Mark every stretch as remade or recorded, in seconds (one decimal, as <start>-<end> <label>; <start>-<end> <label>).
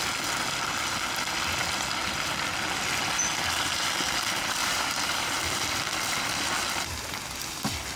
0.0-4.6 recorded; 4.6-5.4 remade; 5.4-8.0 recorded